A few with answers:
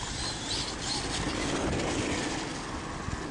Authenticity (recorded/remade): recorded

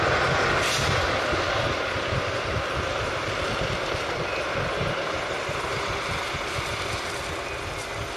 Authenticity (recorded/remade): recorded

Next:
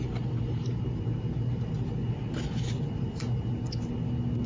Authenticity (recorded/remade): recorded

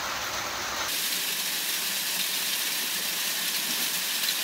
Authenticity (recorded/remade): recorded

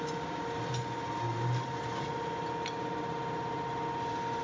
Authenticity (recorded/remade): recorded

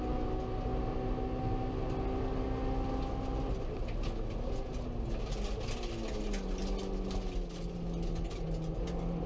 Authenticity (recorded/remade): recorded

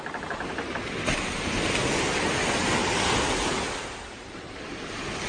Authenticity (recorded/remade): recorded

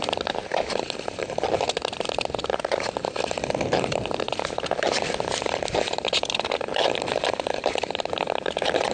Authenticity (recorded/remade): remade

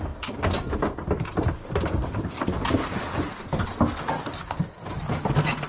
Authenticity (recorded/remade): recorded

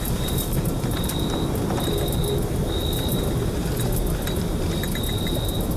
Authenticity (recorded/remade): recorded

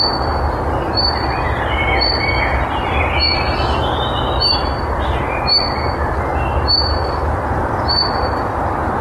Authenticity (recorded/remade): remade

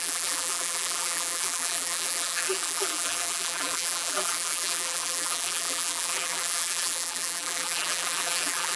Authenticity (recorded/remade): remade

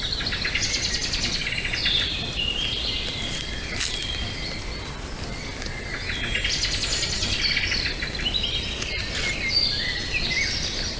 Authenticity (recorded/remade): recorded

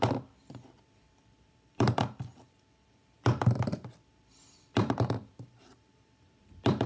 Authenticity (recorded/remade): remade